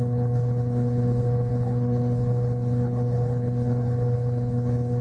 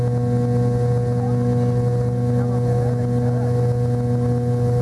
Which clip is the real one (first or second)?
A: second